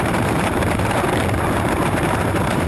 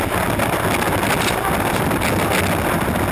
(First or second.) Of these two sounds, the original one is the second